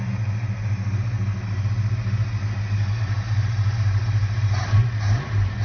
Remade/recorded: recorded